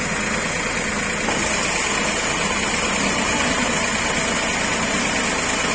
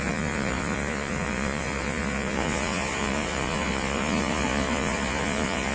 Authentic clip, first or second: first